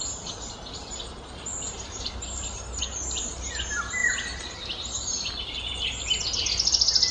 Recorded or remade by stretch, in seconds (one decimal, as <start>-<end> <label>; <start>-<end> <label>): 0.0-1.5 recorded; 1.5-2.8 remade; 2.8-4.0 recorded; 4.0-5.7 remade; 5.7-7.1 recorded

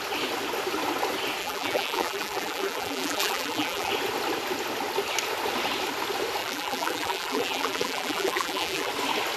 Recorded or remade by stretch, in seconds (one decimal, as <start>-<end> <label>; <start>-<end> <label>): 0.0-1.4 recorded; 1.4-3.9 remade; 3.9-6.4 recorded; 6.4-8.9 remade; 8.9-9.4 recorded